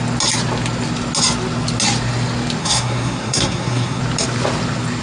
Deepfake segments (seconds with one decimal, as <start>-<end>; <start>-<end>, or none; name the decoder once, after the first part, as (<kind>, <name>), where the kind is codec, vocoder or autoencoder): 2.6-4.0 (codec, SNAC)